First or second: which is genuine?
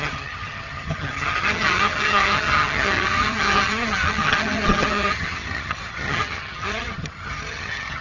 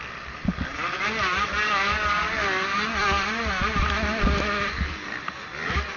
second